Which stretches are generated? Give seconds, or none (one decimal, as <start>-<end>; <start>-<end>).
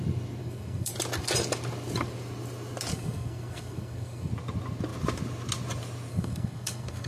0.4-0.9; 2.9-4.3; 6.1-7.1